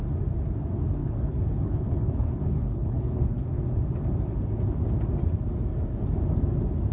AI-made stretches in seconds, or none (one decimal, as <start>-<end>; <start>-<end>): 1.0-3.6